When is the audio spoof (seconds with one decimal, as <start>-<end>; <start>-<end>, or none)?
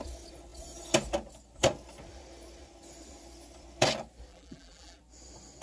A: 4.3-5.0